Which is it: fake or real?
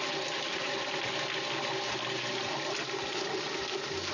real